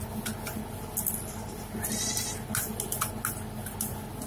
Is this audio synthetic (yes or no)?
no